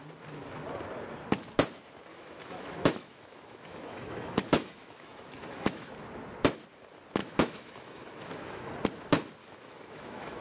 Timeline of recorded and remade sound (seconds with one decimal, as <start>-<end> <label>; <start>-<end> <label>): 0.0-2.1 recorded; 2.1-5.9 remade; 5.9-7.2 recorded; 7.2-8.7 remade; 8.7-9.4 recorded; 9.4-10.4 remade

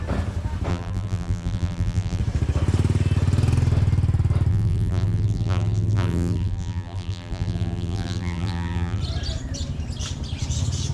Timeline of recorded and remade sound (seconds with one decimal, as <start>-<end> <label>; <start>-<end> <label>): 0.0-0.7 recorded; 0.7-2.2 remade; 2.2-4.5 recorded; 4.5-9.0 remade; 9.0-10.9 recorded